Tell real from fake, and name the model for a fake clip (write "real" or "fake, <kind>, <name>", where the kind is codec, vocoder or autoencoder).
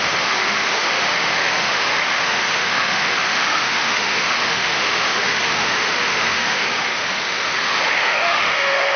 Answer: fake, autoencoder, DAC-VAE